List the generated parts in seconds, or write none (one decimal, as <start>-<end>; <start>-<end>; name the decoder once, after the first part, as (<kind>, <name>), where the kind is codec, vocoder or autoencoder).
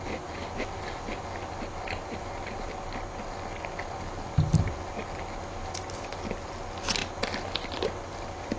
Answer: none